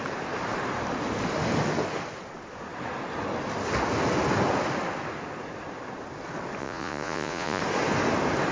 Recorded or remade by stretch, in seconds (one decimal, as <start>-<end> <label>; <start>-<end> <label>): 0.0-6.6 recorded; 6.6-7.6 remade; 7.6-8.5 recorded